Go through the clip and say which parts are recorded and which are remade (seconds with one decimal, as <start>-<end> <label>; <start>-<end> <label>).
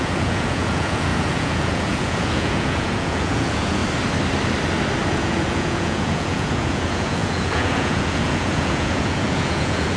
0.0-3.8 remade; 3.8-5.1 recorded; 5.1-10.0 remade